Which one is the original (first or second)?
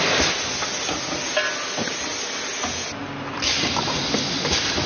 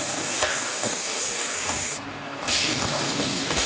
first